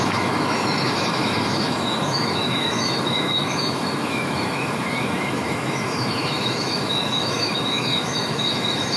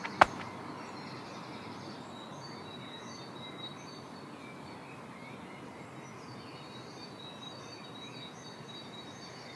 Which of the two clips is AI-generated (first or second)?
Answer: first